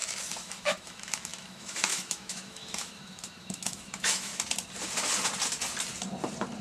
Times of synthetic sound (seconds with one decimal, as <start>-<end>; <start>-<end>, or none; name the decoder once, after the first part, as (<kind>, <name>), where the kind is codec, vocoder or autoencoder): 0.0-4.3 (autoencoder, DAC-VAE)